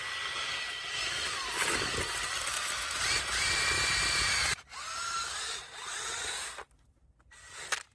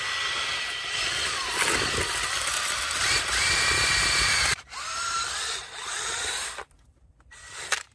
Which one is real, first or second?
first